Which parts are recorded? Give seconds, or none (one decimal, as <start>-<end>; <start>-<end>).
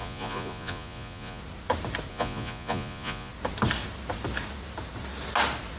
1.4-2.1; 3.3-5.8